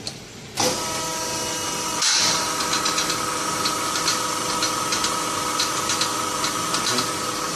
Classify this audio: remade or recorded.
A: recorded